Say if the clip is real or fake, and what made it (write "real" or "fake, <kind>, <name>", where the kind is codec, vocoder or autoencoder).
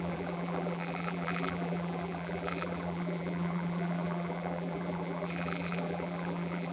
fake, vocoder, BigVGAN v2